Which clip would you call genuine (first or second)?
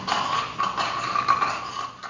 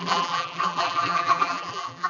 first